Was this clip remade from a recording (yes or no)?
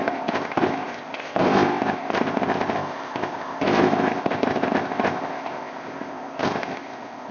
yes